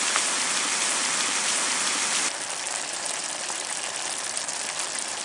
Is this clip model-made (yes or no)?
yes